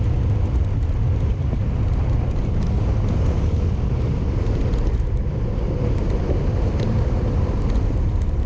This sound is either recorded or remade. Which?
recorded